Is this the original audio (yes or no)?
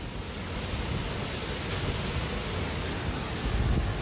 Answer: yes